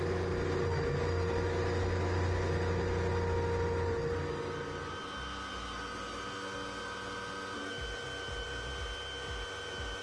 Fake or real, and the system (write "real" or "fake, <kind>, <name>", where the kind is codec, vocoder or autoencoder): real